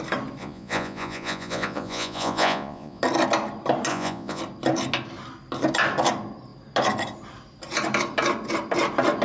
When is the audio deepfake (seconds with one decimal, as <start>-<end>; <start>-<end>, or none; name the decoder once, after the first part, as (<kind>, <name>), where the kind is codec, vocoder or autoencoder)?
0.4-3.0 (vocoder, Vocos); 3.9-4.4